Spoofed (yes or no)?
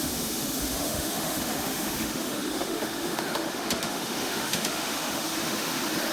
yes